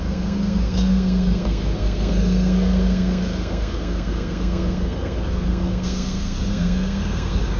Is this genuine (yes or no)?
no